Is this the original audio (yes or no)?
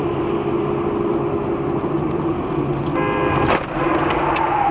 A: yes